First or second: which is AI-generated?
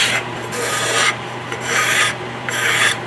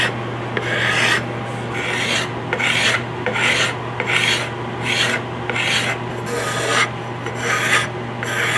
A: first